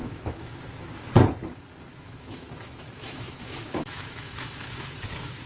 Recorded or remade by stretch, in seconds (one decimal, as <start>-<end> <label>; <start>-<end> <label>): 0.0-0.9 remade; 0.9-1.9 recorded; 1.9-5.5 remade